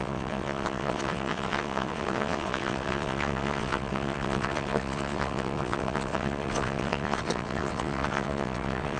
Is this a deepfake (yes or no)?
yes